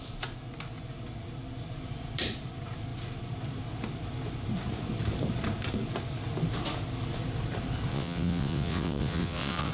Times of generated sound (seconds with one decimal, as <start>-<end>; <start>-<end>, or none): 7.9-9.7